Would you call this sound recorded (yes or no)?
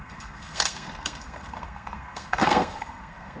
no